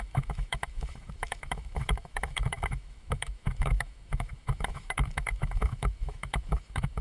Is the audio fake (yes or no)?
yes